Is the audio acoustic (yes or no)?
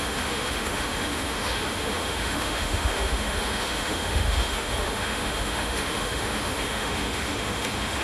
no